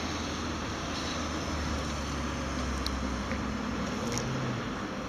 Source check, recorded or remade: recorded